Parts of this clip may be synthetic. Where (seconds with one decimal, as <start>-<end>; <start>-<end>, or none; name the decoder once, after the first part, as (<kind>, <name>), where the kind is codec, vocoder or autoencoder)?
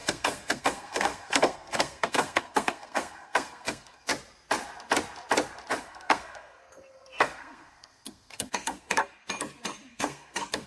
0.0-4.1 (codec, SNAC); 5.8-9.0; 9.9-10.7